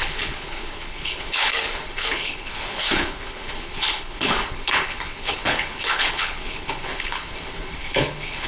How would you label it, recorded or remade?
remade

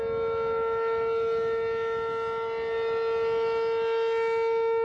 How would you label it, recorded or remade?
recorded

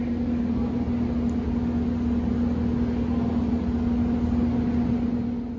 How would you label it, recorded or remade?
recorded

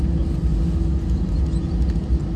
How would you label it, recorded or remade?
recorded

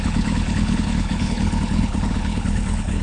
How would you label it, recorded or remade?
remade